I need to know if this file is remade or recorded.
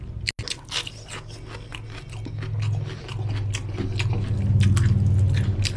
recorded